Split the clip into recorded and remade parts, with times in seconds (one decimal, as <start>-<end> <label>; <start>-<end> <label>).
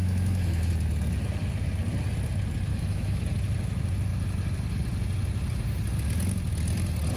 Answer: 0.0-0.7 remade; 0.7-2.7 recorded; 2.7-3.2 remade; 3.2-7.2 recorded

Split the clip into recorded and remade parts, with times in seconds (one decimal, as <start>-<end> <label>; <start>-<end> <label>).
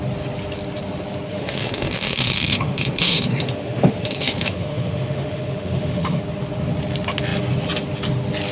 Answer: 0.0-1.3 recorded; 1.3-6.2 remade; 6.2-8.5 recorded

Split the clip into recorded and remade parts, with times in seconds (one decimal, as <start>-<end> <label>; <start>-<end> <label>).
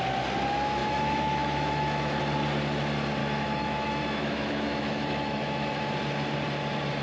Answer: 0.0-0.8 recorded; 0.8-2.2 remade; 2.2-3.2 recorded; 3.2-5.9 remade; 5.9-7.0 recorded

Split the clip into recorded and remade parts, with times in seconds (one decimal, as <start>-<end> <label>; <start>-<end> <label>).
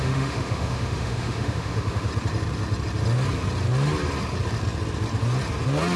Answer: 0.0-2.1 remade; 2.1-6.0 recorded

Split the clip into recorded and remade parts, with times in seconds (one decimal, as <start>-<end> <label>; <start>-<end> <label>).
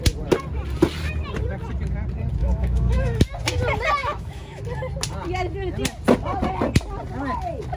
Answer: 0.0-2.4 recorded; 2.4-3.2 remade; 3.2-4.0 recorded; 4.0-4.6 remade; 4.6-7.8 recorded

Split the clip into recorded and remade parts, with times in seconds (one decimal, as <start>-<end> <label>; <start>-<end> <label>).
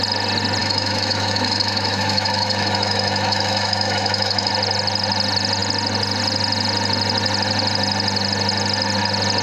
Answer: 0.0-0.6 recorded; 0.6-4.5 remade; 4.5-9.4 recorded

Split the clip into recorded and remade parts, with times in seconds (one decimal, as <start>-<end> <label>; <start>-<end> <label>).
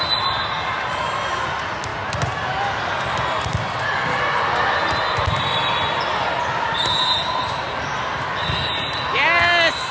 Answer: 0.0-9.9 recorded